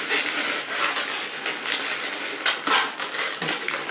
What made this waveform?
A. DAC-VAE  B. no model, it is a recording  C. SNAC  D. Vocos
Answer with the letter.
B